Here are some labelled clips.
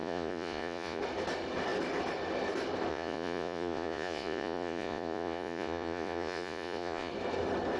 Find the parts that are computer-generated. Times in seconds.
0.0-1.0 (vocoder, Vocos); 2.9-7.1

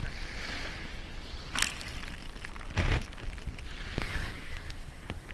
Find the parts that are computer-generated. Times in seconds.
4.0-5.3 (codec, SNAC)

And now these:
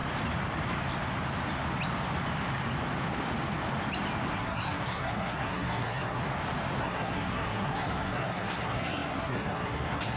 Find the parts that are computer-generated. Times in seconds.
4.3-6.2 (codec, SNAC); 6.8-10.2

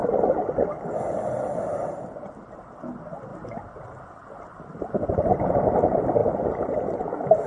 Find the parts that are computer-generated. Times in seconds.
none

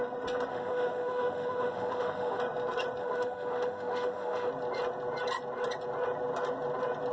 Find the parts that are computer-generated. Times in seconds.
0.5-2.4 (autoencoder, DAC-VAE); 3.0-4.5